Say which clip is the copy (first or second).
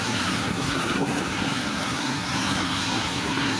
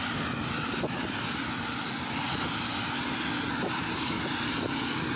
first